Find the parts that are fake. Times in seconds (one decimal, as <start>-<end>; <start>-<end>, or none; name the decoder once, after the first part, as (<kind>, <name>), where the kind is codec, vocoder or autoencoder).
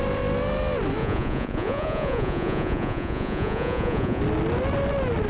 1.0-4.2 (vocoder, Vocos)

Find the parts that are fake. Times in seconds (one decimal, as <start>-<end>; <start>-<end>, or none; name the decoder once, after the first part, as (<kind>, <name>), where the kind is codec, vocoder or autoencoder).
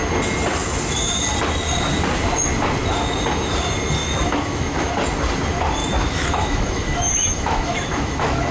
4.0-4.9 (autoencoder, DAC-VAE); 5.8-8.5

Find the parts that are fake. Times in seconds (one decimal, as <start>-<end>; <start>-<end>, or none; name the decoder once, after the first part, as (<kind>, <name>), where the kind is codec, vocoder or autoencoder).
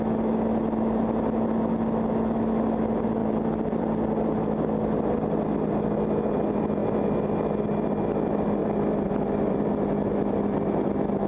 3.2-4.5 (vocoder, BigVGAN v2); 8.6-9.9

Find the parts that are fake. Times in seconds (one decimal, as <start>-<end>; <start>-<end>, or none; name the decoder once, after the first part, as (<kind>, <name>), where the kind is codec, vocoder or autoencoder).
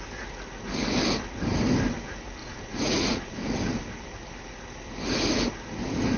2.4-3.4 (vocoder, Vocos)